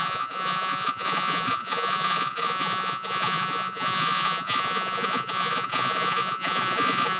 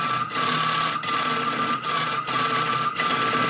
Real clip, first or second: second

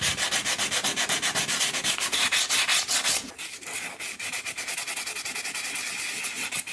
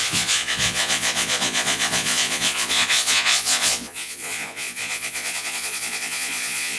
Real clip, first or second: first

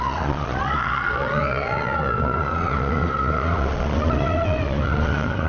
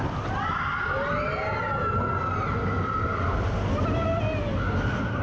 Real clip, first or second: second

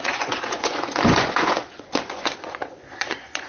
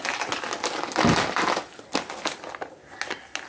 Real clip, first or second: second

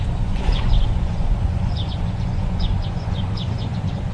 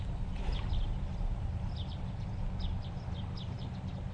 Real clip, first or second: second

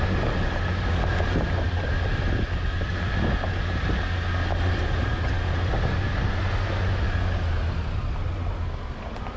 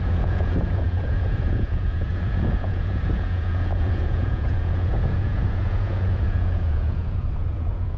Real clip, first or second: first